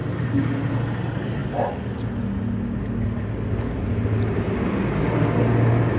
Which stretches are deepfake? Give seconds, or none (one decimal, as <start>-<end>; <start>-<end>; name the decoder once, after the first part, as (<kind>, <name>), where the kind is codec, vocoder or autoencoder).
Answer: none